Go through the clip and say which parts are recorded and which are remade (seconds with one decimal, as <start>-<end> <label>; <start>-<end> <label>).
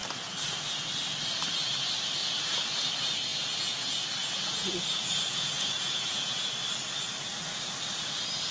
0.0-2.2 recorded; 2.2-2.9 remade; 2.9-3.3 recorded; 3.3-6.5 remade; 6.5-8.5 recorded